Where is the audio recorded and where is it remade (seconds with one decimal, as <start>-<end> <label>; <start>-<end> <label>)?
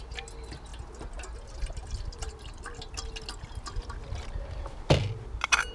0.0-5.7 recorded